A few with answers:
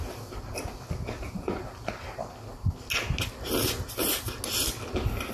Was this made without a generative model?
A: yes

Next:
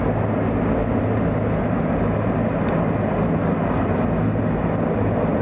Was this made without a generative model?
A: yes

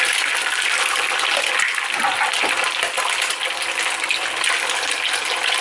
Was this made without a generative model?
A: yes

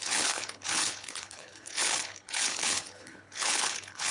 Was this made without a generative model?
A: no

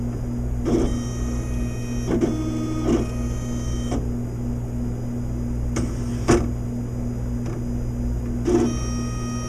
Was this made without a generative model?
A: yes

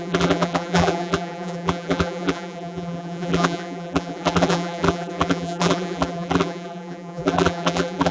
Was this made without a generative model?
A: no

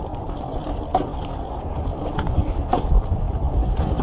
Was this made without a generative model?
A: no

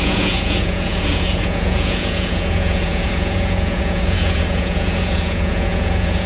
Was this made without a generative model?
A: no